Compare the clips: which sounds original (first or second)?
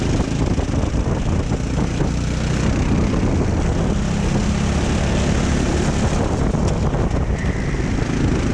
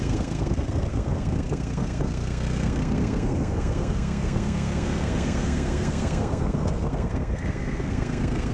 first